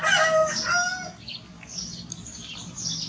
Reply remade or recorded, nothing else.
recorded